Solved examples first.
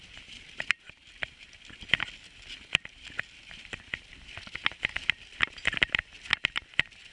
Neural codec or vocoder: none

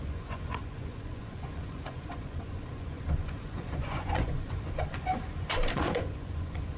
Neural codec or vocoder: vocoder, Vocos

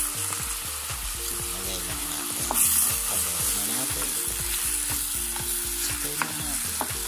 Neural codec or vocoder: none